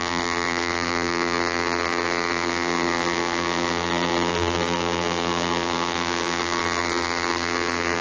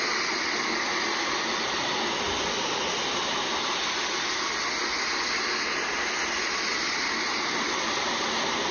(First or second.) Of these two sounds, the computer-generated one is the first